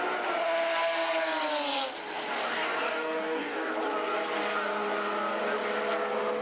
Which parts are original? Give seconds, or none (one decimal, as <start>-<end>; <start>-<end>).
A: 0.0-2.4; 3.7-6.4